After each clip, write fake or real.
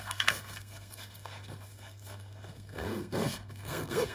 fake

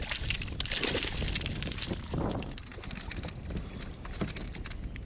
real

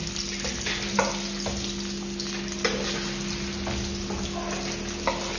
real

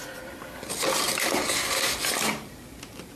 real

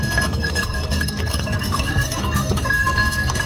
fake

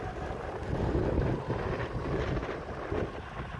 real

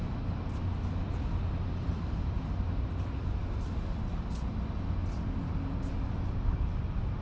real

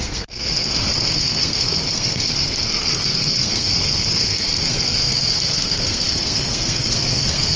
fake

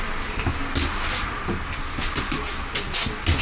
real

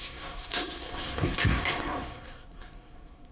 fake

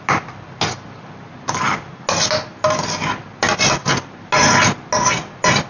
real